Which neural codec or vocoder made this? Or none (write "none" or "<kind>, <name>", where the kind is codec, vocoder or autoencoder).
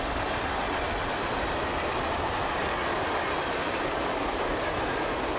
none